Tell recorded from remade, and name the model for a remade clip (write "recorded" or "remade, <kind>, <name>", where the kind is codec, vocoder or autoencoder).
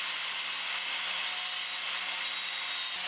recorded